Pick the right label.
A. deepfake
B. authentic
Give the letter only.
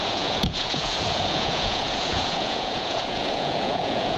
A